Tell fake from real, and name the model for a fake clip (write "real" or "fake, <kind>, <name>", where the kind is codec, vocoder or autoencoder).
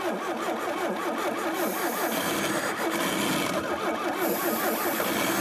real